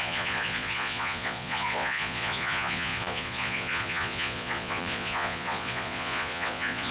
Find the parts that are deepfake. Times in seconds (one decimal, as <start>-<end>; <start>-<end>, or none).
0.0-6.9